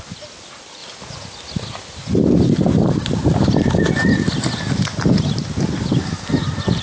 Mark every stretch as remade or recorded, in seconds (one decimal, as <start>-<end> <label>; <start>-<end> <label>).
0.0-6.8 recorded